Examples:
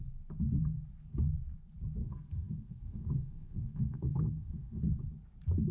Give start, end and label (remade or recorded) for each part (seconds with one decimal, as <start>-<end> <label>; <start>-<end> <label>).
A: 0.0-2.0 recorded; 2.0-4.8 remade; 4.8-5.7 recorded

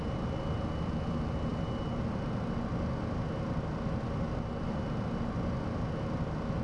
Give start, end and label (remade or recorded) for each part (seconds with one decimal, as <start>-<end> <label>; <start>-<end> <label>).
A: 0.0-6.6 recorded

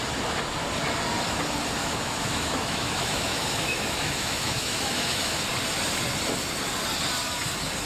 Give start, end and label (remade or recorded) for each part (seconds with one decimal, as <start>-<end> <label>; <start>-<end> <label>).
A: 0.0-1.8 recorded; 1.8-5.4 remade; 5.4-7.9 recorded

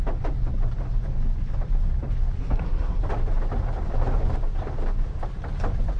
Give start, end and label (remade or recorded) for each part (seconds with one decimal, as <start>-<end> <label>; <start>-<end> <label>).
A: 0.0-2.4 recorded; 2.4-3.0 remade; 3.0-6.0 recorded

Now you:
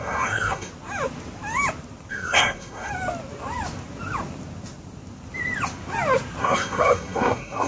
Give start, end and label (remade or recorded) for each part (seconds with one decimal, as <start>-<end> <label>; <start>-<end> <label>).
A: 0.0-0.7 remade; 0.7-2.1 recorded; 2.1-2.9 remade; 2.9-6.4 recorded; 6.4-7.7 remade